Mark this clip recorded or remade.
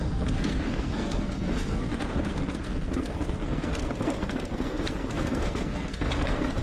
remade